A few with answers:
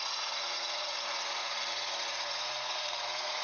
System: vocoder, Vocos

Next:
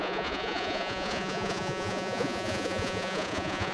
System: vocoder, Vocos